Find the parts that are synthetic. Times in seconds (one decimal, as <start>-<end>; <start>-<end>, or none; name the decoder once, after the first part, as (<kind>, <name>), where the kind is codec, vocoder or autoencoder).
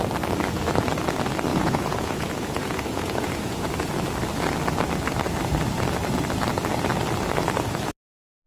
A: 1.5-3.7 (vocoder, Vocos)